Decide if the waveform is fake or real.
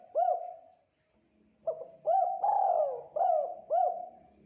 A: real